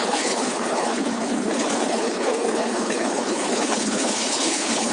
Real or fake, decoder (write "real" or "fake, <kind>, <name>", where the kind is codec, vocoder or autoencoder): fake, codec, HILCodec